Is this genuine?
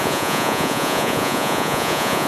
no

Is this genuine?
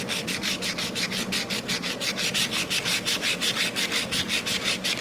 no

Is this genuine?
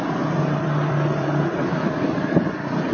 no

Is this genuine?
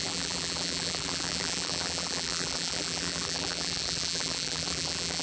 no